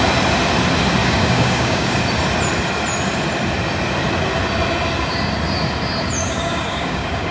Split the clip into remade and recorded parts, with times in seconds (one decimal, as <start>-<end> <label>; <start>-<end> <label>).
0.0-1.0 recorded; 1.0-2.0 remade; 2.0-6.2 recorded; 6.2-7.3 remade